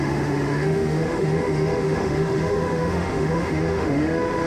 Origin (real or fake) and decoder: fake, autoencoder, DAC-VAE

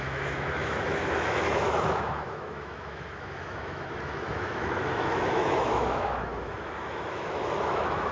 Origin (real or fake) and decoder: fake, autoencoder, DAC-VAE